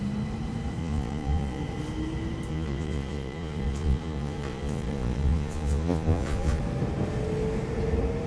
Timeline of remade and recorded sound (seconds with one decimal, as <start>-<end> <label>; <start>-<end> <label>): 0.0-0.8 recorded; 0.8-1.6 remade; 1.6-2.5 recorded; 2.5-6.6 remade; 6.6-8.3 recorded